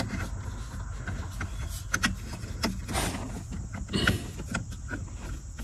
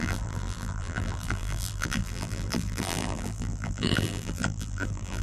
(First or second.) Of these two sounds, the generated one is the second